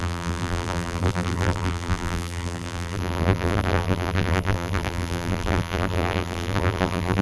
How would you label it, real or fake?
fake